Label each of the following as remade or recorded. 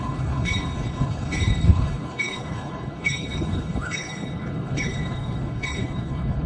remade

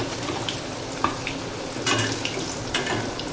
recorded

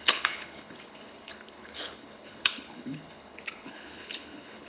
remade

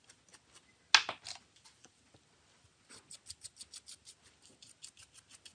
recorded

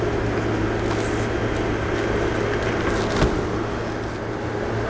recorded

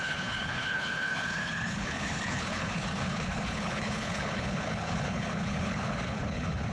remade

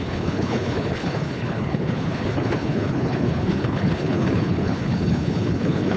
remade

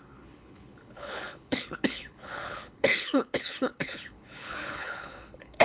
remade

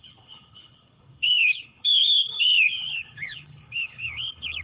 remade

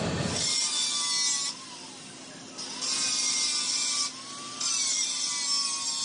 recorded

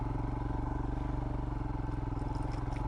recorded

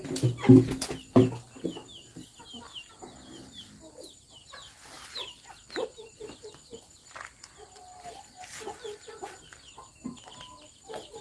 recorded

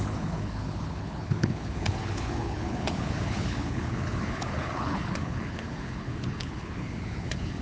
remade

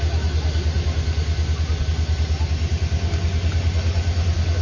recorded